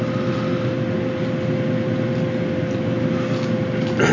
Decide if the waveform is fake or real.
real